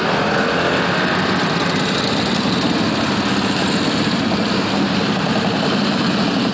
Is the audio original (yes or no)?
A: yes